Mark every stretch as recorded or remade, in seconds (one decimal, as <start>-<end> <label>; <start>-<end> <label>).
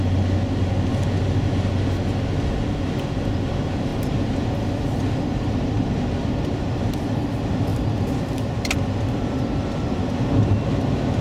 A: 0.0-11.2 recorded